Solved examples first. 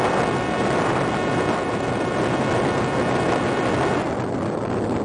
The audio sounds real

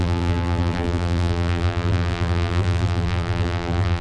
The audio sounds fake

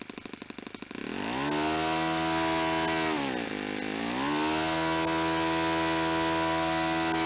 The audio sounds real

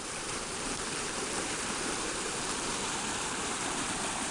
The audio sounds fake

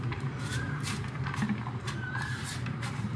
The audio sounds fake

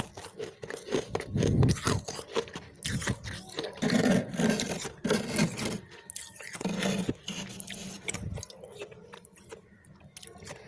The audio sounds real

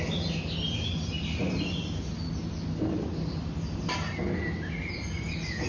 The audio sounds real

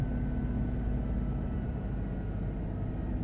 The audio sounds real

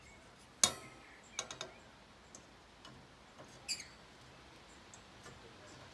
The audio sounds real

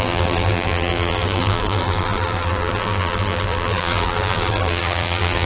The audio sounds fake